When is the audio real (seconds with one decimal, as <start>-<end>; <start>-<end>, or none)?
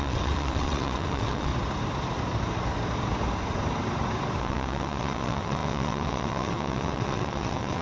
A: 1.5-4.4